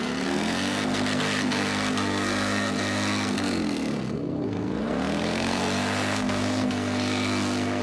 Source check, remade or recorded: remade